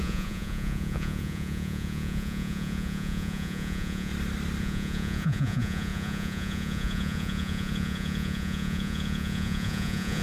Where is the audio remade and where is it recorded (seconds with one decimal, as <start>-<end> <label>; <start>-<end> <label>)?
0.0-4.1 remade; 4.1-4.6 recorded; 4.6-10.2 remade